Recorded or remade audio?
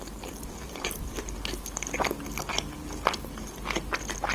recorded